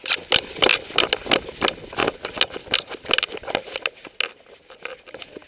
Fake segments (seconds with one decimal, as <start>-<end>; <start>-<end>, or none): none